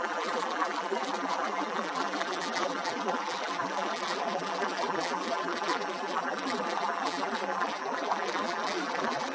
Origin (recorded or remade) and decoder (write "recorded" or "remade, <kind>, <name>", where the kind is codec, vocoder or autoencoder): remade, vocoder, BigVGAN v2